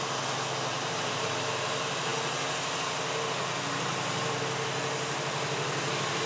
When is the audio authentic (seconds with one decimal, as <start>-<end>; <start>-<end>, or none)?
0.0-0.7; 1.3-3.9; 4.4-6.3